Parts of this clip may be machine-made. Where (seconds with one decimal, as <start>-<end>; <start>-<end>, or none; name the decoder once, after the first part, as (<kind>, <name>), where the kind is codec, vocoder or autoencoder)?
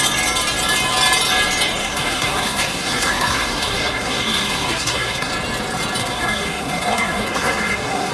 1.8-5.3 (codec, SNAC); 6.0-8.1